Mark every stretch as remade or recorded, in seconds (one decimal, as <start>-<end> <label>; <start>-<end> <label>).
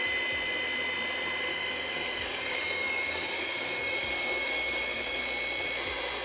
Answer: 0.0-1.5 recorded; 1.5-5.2 remade; 5.2-6.2 recorded